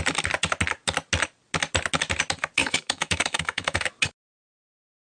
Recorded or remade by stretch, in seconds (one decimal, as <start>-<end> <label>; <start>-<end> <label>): 0.0-2.6 recorded; 2.6-3.9 remade; 3.9-5.0 recorded